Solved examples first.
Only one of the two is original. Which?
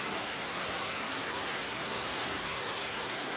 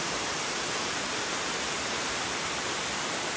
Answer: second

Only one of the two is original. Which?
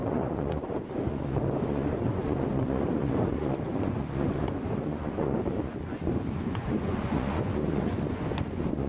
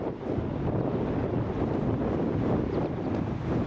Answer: second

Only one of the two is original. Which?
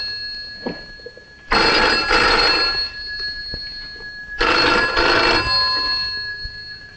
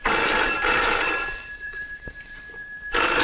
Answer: first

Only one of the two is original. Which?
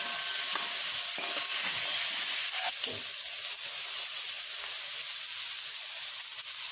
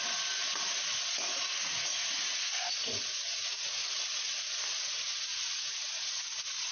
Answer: first